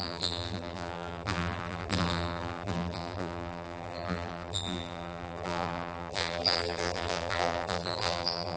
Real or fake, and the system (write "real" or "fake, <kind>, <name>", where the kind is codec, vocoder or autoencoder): fake, vocoder, BigVGAN v2